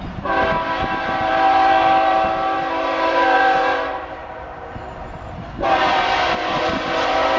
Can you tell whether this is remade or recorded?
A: remade